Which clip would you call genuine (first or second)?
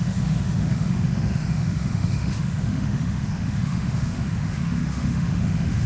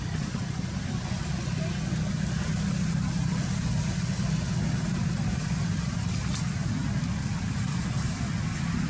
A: second